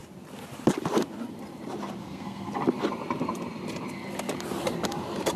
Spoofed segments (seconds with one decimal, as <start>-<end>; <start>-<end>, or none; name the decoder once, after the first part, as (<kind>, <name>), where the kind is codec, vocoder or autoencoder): 2.0-2.5 (codec, SNAC)